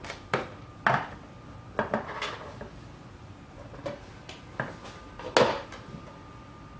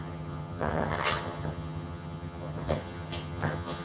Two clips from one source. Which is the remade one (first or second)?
second